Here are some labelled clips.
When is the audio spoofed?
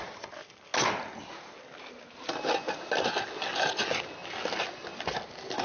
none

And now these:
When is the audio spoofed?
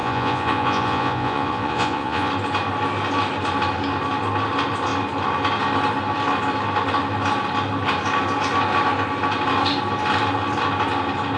0.0-2.3 (vocoder, Vocos)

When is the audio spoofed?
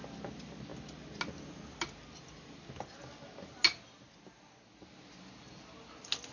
none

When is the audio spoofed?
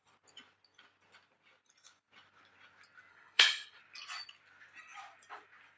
3.1-3.8 (codec, HILCodec)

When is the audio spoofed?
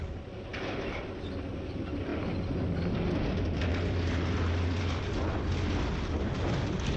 none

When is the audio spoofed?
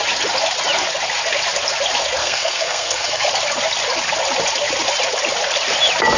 2.2-3.3 (codec, SNAC)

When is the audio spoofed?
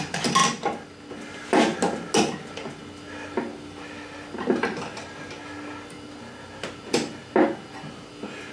none